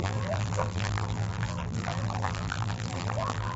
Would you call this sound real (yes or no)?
no